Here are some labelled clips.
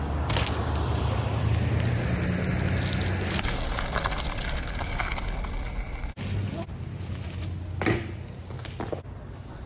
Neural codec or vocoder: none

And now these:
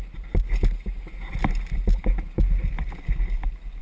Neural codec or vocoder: none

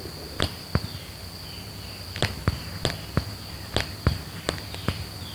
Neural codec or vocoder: none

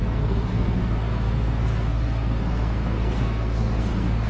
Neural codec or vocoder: codec, SNAC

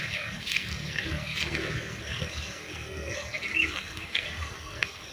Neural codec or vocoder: codec, SNAC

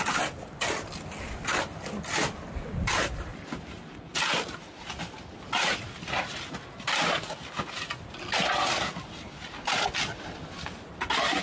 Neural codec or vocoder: none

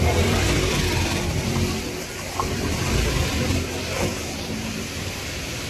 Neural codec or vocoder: vocoder, BigVGAN v2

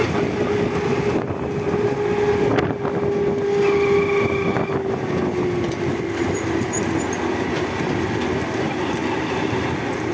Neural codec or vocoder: none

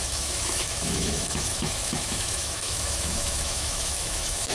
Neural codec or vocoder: autoencoder, DAC-VAE